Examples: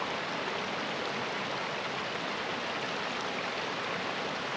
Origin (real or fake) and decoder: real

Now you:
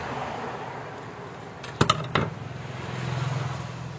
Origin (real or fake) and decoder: real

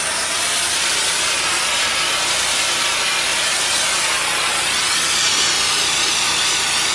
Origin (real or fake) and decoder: real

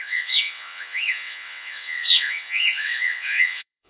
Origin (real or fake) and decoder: fake, vocoder, WaveNeXt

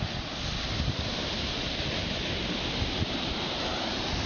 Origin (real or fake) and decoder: real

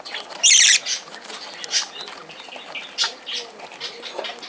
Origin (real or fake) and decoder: real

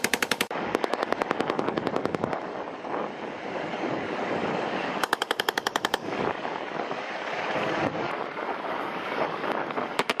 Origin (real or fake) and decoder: fake, codec, DAC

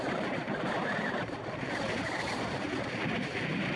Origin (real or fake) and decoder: fake, vocoder, BigVGAN v2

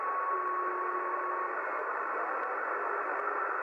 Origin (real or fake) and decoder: real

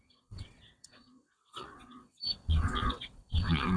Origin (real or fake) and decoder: fake, vocoder, WaveNeXt